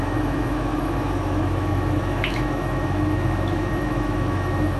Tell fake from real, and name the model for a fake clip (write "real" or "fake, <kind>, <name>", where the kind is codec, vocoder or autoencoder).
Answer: fake, autoencoder, DAC-VAE